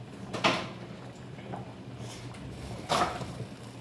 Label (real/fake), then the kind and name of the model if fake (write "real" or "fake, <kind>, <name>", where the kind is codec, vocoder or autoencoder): real